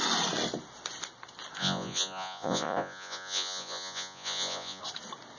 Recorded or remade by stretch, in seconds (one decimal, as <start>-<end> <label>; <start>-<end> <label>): 0.0-1.6 recorded; 1.6-4.8 remade; 4.8-5.4 recorded